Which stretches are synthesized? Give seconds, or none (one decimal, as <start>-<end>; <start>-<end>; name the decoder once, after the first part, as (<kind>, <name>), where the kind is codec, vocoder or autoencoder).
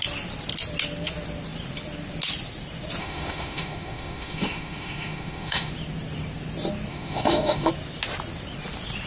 3.0-5.7 (autoencoder, DAC-VAE); 6.9-7.7